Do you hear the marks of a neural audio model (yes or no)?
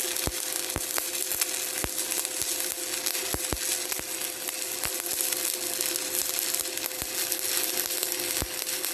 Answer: no